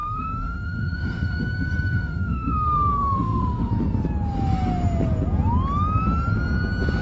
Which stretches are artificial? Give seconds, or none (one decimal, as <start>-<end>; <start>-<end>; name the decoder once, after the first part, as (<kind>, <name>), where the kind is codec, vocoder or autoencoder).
0.0-3.7 (autoencoder, DAC-VAE)